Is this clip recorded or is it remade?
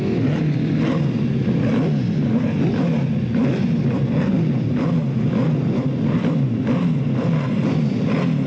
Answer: recorded